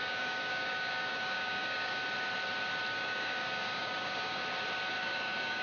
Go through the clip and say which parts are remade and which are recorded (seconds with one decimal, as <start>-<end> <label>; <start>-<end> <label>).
0.0-2.0 remade; 2.0-2.9 recorded; 2.9-4.4 remade; 4.4-5.0 recorded; 5.0-5.6 remade